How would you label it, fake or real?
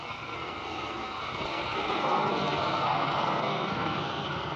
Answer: fake